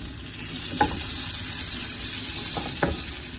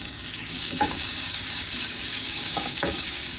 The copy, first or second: second